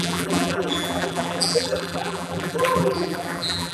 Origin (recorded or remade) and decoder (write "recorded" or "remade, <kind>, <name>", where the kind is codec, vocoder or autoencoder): remade, vocoder, BigVGAN v2